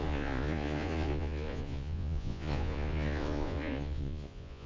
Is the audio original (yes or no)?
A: no